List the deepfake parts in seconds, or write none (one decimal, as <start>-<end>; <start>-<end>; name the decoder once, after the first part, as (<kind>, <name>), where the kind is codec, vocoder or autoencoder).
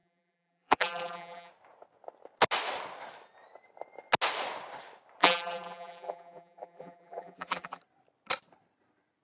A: 0.0-1.5 (vocoder, BigVGAN v2); 5.2-7.8